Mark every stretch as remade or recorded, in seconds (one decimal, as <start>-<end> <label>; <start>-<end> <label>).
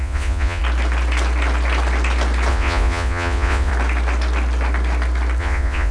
0.0-0.6 remade; 0.6-2.5 recorded; 2.5-3.7 remade; 3.7-5.4 recorded; 5.4-5.9 remade